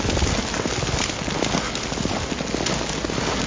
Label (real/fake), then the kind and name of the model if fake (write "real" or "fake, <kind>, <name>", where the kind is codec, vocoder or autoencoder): real